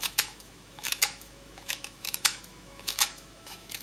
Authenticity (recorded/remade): remade